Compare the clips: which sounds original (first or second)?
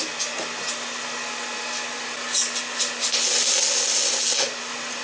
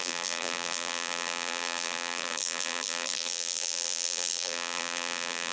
first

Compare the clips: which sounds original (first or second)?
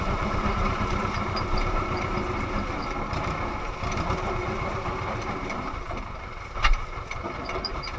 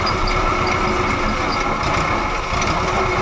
second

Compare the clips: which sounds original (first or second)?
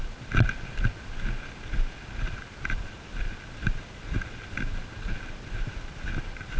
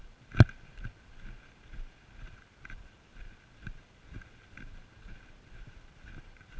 first